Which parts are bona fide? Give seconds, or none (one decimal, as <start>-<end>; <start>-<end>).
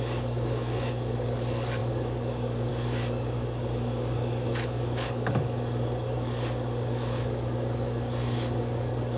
none